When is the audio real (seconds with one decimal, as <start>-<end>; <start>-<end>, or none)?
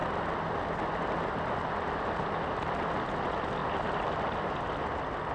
0.0-3.6; 4.1-5.3